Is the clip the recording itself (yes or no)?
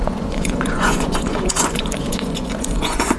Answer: no